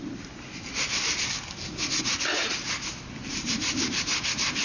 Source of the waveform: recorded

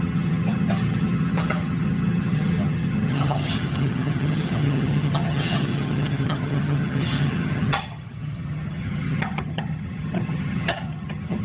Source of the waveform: remade